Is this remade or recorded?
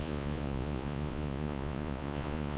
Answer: remade